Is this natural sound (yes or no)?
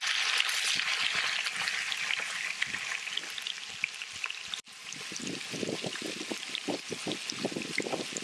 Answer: yes